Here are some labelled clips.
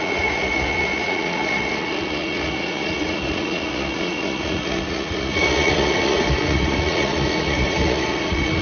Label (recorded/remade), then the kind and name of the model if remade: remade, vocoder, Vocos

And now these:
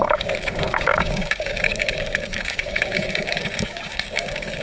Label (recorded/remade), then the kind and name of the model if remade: remade, codec, DAC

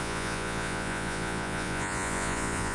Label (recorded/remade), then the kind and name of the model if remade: remade, vocoder, Vocos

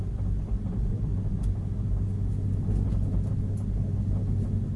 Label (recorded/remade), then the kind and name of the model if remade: recorded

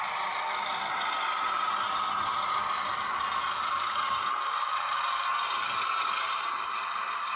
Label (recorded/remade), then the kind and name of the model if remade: recorded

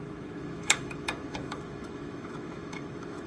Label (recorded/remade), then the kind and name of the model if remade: remade, autoencoder, DAC-VAE